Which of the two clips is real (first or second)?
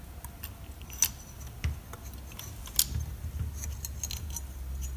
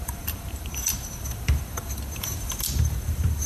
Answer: first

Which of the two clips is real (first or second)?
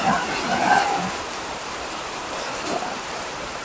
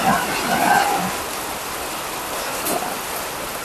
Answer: second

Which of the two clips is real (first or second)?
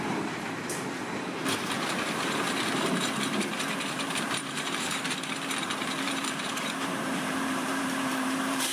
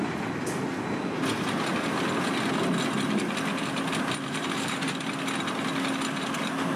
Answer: second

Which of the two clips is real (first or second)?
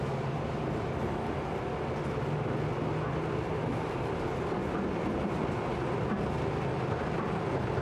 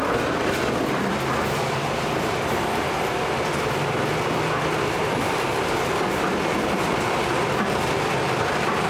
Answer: first